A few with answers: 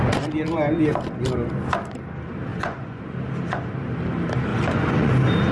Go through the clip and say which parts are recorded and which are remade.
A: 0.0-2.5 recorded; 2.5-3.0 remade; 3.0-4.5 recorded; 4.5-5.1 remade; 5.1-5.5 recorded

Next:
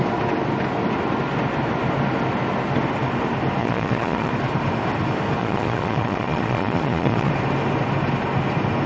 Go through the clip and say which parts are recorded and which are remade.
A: 0.0-3.6 recorded; 3.6-4.3 remade; 4.3-5.4 recorded; 5.4-7.3 remade; 7.3-8.9 recorded